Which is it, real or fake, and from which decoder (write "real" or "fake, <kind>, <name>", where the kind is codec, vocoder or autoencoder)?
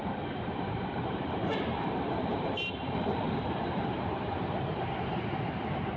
fake, vocoder, BigVGAN v2